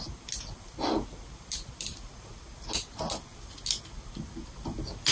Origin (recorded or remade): recorded